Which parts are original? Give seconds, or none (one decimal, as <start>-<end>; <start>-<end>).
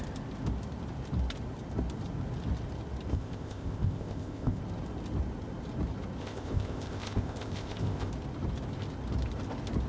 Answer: 0.0-3.1; 4.6-6.2; 8.1-9.9